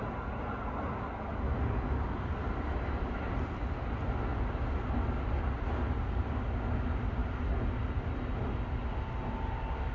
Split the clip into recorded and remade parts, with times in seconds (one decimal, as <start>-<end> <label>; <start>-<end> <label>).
0.0-9.9 recorded